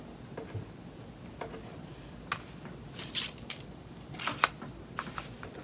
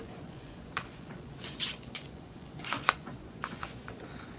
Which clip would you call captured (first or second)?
first